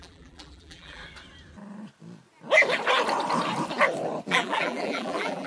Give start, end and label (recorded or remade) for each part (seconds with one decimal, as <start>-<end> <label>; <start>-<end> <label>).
0.0-1.0 remade; 1.0-4.3 recorded; 4.3-5.5 remade